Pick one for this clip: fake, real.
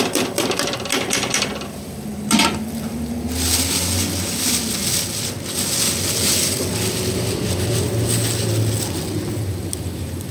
real